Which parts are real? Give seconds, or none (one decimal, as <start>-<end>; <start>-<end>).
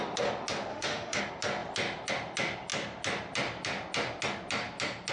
0.0-0.7; 1.2-5.1